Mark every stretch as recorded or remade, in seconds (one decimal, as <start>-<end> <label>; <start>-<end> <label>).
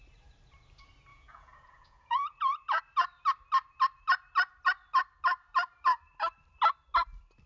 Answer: 0.0-1.1 recorded; 1.1-2.8 remade; 2.8-7.5 recorded